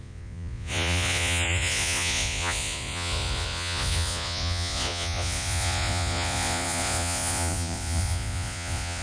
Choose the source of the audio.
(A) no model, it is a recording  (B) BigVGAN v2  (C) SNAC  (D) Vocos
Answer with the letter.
D